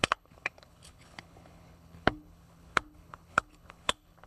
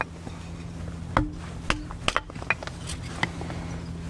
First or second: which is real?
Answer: second